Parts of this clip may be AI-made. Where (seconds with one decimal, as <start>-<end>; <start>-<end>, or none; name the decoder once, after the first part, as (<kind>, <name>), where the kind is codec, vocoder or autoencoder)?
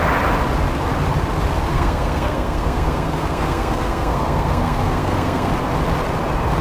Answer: 1.7-5.5 (codec, SNAC)